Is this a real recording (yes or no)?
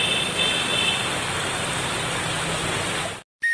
yes